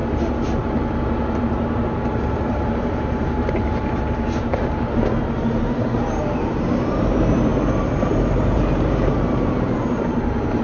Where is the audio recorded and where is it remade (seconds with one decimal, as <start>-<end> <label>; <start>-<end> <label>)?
0.0-1.4 recorded; 1.4-10.6 remade